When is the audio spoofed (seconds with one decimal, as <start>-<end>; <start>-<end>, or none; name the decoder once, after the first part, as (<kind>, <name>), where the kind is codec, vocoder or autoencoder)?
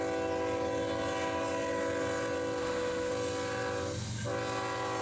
2.6-3.1 (autoencoder, DAC-VAE)